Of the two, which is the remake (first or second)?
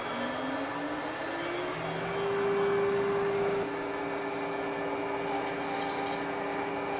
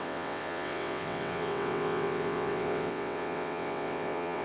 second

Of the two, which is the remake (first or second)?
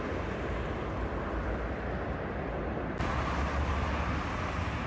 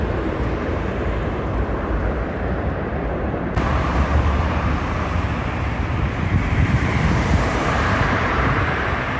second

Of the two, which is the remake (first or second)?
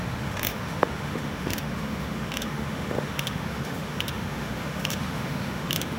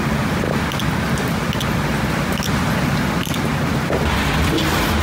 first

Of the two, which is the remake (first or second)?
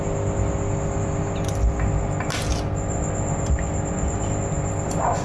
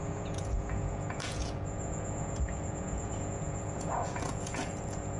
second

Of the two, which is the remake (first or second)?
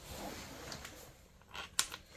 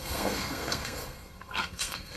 second